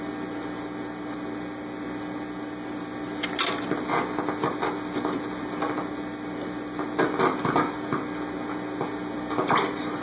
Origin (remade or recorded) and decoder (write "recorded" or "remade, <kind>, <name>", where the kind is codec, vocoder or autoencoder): recorded